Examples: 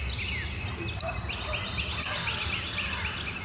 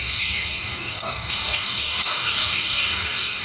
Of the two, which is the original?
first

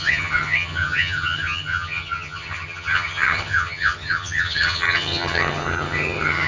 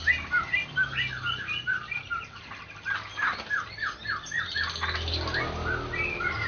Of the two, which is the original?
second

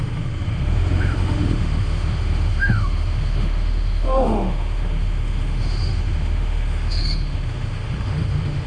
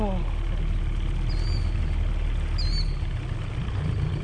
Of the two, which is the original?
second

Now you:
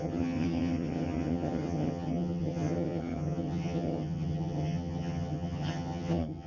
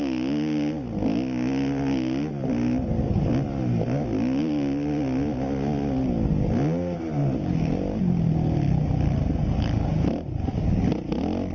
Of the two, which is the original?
second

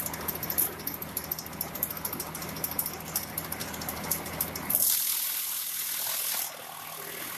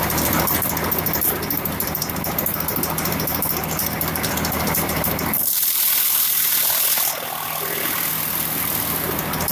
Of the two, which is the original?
first